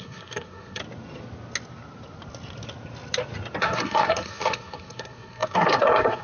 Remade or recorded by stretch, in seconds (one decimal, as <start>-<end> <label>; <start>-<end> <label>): 0.0-0.8 remade; 0.8-3.6 recorded; 3.6-6.2 remade